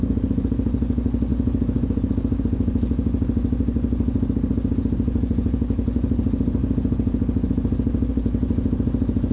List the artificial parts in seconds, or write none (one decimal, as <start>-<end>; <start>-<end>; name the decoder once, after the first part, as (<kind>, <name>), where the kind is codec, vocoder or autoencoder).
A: none